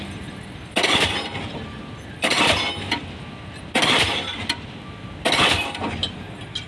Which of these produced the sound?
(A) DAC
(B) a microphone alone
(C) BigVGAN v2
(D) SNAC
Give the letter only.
B